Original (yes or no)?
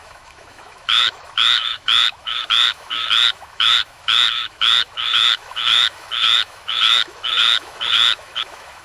no